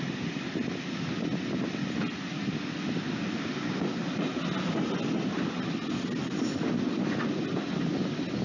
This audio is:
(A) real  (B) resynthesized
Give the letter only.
A